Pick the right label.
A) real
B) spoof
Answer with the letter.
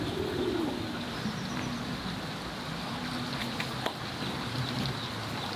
A